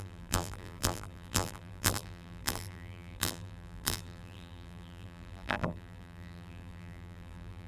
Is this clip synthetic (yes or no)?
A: yes